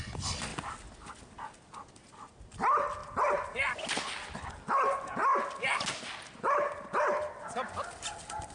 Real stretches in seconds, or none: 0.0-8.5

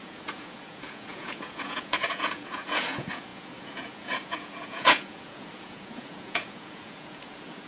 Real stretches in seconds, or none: none

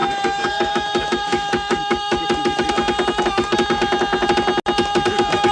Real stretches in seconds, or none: 2.7-5.5